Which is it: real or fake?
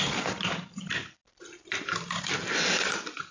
fake